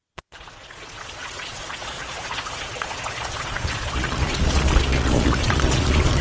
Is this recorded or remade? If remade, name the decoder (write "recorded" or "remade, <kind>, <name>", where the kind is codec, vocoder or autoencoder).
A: remade, vocoder, Vocos